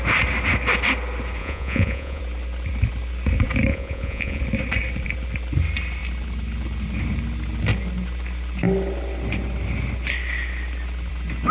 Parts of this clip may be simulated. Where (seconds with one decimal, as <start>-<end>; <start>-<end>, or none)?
1.4-2.2; 3.7-4.4